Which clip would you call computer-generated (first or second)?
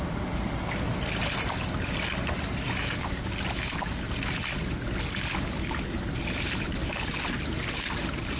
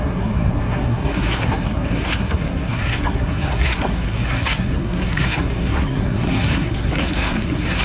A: second